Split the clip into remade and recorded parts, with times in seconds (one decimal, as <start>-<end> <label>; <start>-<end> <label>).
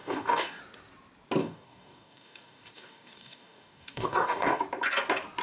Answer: 0.0-0.6 remade; 0.6-1.4 recorded; 1.4-4.6 remade; 4.6-5.4 recorded